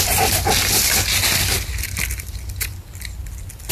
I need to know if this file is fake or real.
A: real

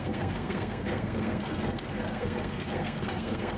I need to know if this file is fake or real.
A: fake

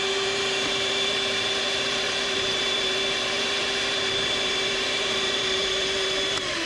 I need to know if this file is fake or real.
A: fake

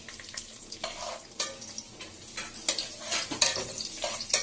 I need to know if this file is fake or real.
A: real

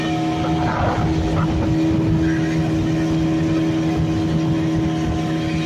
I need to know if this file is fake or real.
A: real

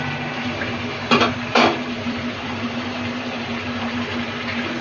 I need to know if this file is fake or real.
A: fake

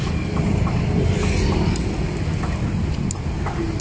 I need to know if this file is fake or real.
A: real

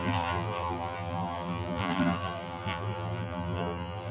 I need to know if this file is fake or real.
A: fake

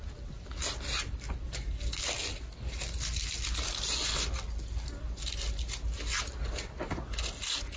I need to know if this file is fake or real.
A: real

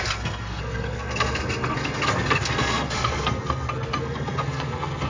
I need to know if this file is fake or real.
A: fake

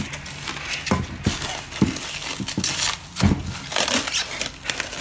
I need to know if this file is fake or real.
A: real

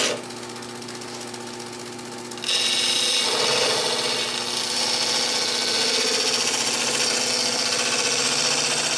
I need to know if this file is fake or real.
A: real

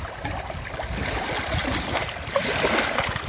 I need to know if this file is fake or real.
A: real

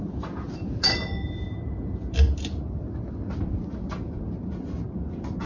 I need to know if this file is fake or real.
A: real